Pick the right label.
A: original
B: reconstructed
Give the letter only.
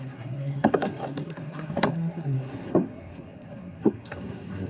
B